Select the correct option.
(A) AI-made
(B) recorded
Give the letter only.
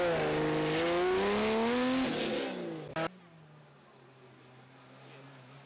B